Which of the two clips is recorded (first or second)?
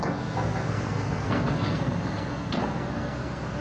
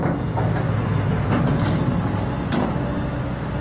second